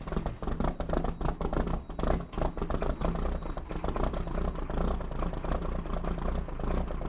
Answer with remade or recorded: recorded